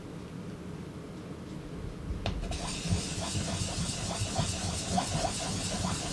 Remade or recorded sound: recorded